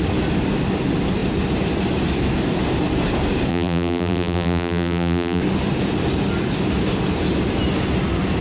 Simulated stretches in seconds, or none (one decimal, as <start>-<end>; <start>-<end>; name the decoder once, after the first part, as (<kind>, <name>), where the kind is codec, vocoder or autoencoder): 3.5-5.4 (vocoder, BigVGAN v2)